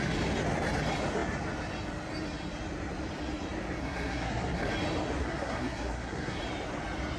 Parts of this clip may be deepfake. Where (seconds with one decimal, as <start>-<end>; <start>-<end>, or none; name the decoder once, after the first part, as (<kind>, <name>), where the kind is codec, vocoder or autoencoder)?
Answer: 3.8-4.7 (codec, SNAC); 5.2-6.4